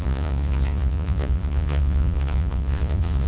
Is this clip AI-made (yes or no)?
yes